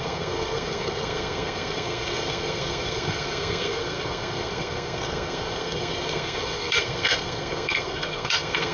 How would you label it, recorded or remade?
remade